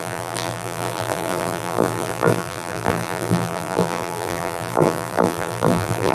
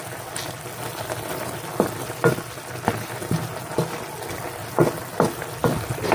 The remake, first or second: first